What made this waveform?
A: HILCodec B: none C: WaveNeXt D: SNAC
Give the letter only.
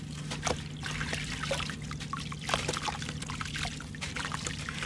B